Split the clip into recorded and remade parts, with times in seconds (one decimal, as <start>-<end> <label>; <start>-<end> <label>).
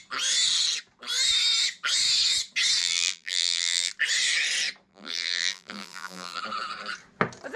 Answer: 0.0-2.8 recorded; 2.8-3.9 remade; 3.9-4.9 recorded; 4.9-6.4 remade; 6.4-7.6 recorded